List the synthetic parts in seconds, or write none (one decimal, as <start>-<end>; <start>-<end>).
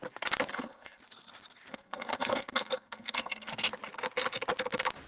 0.5-1.0; 1.7-3.5